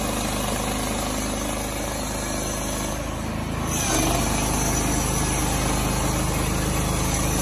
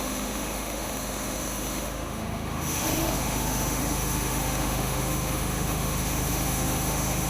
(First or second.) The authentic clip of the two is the first